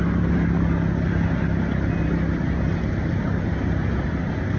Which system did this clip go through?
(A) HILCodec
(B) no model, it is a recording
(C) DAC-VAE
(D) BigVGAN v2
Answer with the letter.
B